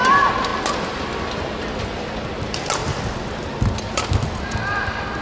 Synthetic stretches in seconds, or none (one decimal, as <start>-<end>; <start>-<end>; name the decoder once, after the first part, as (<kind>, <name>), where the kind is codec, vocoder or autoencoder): none